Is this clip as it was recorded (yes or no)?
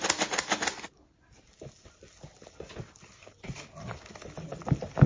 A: yes